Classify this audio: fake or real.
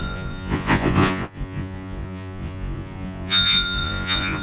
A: fake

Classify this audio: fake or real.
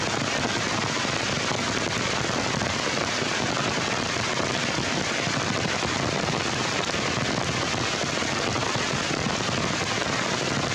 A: real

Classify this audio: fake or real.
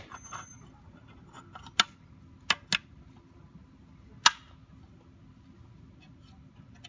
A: real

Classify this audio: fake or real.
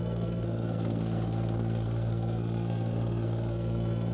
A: fake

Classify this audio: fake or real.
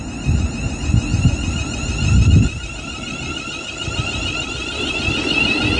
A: real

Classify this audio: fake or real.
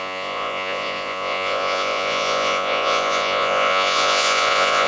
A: fake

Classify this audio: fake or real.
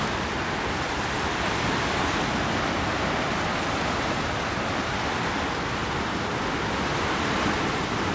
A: real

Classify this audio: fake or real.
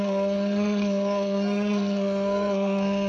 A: fake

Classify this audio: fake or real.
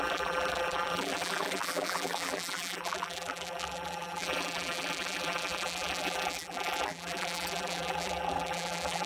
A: fake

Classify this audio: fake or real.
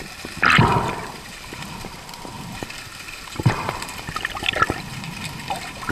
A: fake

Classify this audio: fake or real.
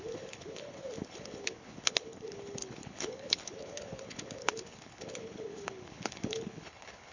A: fake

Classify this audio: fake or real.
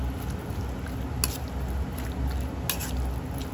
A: real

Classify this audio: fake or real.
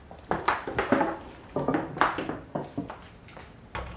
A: real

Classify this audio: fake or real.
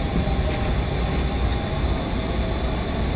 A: real